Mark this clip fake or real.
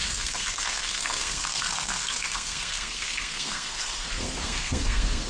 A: fake